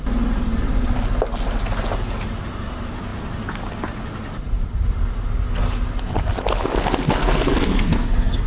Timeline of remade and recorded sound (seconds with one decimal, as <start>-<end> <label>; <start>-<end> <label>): 0.0-7.2 recorded; 7.2-8.5 remade